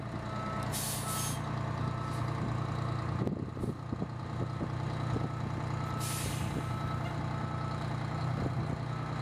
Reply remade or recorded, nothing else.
recorded